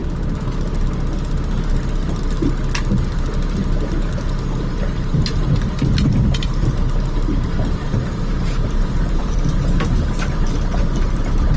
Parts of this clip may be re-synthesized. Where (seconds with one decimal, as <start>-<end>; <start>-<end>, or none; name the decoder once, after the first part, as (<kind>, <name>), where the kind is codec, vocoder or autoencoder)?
4.7-11.6 (vocoder, BigVGAN v2)